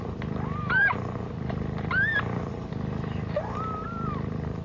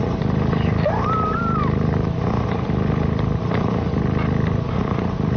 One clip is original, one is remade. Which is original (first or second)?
first